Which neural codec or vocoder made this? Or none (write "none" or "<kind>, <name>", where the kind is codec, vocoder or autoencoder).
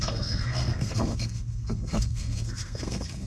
codec, SNAC